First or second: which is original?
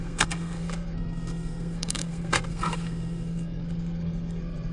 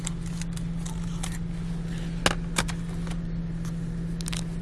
second